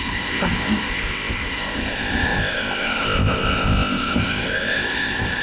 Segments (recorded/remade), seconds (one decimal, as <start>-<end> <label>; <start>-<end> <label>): 0.0-5.4 remade